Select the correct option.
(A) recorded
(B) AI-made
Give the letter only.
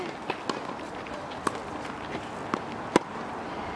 A